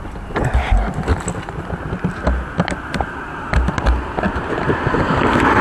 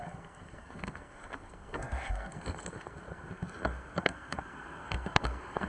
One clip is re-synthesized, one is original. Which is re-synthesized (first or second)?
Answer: second